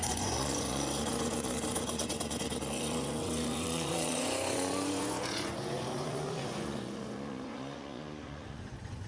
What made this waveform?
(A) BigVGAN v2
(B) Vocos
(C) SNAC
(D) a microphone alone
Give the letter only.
B